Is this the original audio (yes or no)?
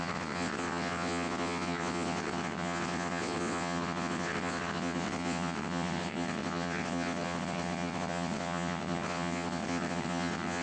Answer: no